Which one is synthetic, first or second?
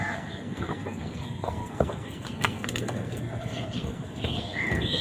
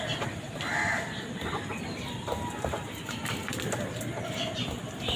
first